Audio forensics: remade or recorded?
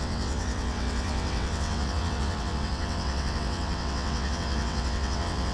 remade